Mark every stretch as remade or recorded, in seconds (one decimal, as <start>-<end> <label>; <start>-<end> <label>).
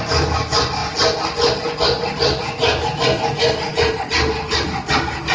0.0-5.3 recorded